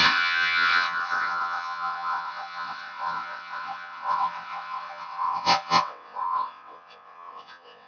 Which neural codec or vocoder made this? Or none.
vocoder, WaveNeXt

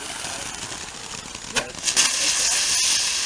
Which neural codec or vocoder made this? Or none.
none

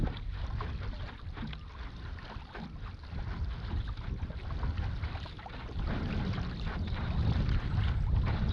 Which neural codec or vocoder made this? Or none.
none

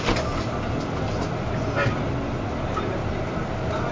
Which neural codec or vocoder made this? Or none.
none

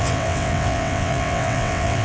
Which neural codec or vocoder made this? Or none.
vocoder, WaveNeXt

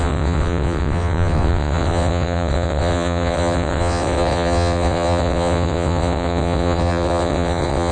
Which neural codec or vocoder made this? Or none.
vocoder, WaveNeXt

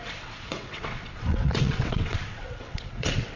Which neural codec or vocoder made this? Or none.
vocoder, WaveNeXt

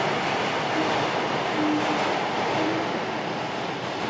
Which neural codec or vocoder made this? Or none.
none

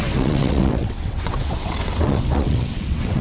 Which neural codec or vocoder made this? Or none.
vocoder, WaveNeXt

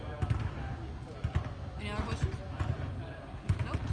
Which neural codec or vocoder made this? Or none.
none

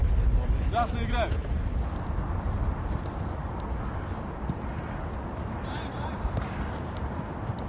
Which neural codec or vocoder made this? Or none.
none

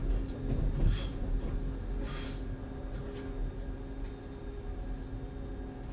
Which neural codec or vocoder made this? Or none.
none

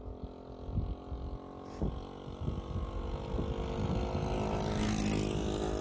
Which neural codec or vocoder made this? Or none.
none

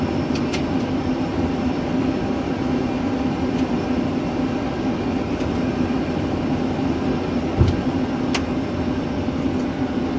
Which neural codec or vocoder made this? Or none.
none